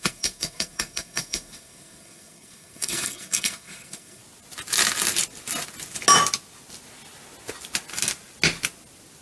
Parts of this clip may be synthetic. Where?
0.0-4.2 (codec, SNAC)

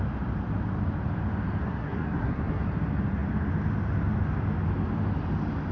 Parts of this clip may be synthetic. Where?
1.6-2.7 (codec, SNAC)

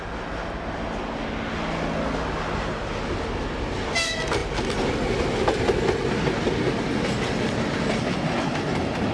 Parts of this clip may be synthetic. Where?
none